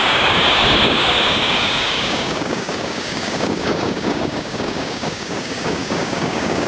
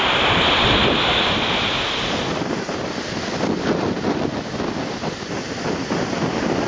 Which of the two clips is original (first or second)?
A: second